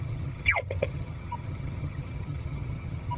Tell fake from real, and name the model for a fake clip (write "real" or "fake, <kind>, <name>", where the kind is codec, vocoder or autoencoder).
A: fake, vocoder, HiFi-GAN